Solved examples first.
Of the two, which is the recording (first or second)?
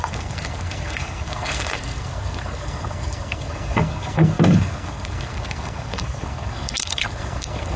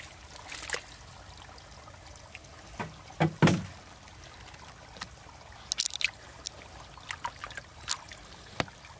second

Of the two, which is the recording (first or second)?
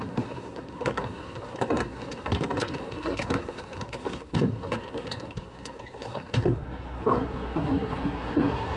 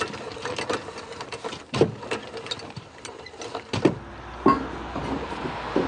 second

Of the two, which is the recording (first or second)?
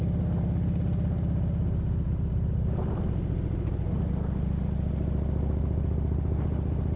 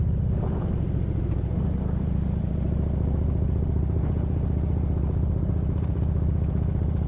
first